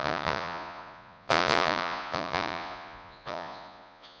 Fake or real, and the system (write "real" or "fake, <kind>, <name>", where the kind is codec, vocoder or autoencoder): fake, vocoder, Vocos